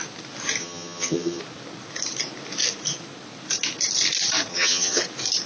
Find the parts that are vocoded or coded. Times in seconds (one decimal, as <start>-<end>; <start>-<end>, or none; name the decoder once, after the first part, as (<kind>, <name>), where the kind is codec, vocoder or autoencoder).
0.6-1.4 (vocoder, HiFi-GAN); 4.5-5.0